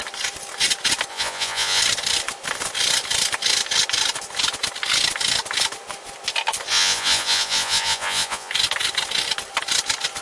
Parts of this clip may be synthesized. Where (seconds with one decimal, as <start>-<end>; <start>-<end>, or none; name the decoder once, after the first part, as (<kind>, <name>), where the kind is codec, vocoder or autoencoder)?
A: 1.1-1.8 (vocoder, Vocos); 6.7-8.5